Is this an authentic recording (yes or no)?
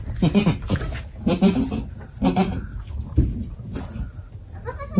yes